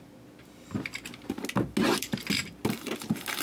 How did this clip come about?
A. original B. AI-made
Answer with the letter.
A